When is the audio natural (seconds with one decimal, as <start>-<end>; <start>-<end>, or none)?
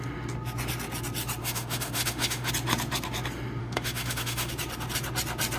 0.0-1.4; 2.5-3.6; 4.5-5.6